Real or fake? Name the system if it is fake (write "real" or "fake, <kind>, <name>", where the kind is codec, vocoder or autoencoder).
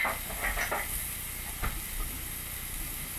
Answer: real